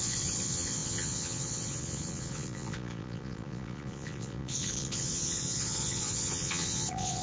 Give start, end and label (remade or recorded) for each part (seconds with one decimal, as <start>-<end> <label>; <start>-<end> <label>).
0.0-7.2 remade